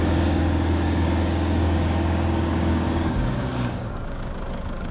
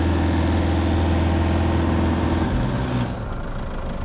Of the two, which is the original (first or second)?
second